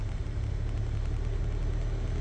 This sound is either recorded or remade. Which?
recorded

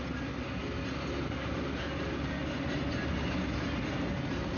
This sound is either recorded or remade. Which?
recorded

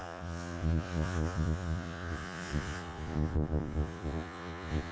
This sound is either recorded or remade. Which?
remade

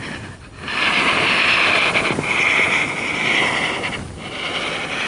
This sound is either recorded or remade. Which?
recorded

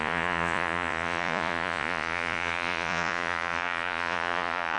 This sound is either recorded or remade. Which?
remade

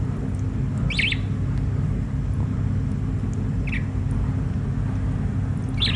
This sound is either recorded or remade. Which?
recorded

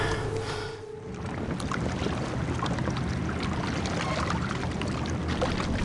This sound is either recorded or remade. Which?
recorded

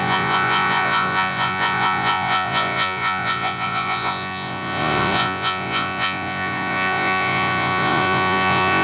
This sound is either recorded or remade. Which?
remade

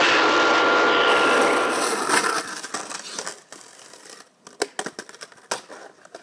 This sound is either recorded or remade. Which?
recorded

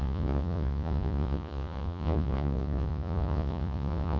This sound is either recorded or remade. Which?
remade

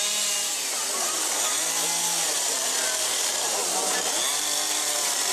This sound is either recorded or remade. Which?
recorded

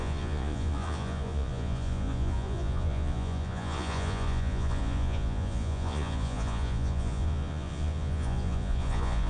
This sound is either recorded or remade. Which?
remade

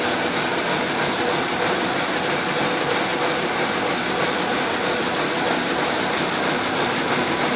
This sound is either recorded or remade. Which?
recorded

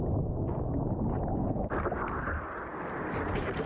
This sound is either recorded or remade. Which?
recorded